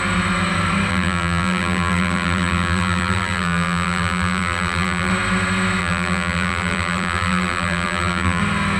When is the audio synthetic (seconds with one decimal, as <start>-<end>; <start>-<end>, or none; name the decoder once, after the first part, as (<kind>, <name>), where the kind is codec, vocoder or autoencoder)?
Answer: 0.9-5.1 (vocoder, BigVGAN v2); 5.8-8.4